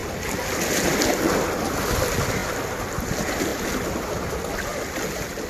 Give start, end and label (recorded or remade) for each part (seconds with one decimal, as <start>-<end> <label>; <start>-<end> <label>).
0.0-5.5 recorded